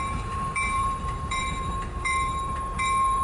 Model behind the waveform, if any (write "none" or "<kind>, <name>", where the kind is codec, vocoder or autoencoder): vocoder, BigVGAN v2